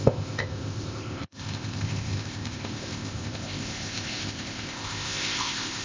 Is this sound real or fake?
fake